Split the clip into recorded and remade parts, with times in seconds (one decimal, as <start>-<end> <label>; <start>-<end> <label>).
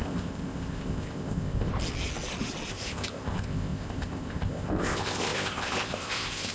0.0-1.7 remade; 1.7-2.7 recorded; 2.7-6.5 remade